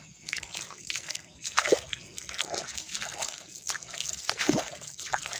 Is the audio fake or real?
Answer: fake